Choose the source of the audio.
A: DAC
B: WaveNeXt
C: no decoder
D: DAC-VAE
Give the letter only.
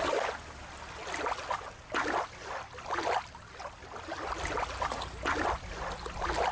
C